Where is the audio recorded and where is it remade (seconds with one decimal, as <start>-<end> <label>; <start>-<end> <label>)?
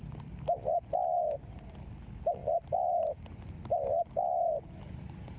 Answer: 0.0-5.4 recorded